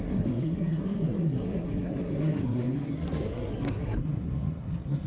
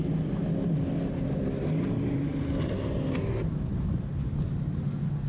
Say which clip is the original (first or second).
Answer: second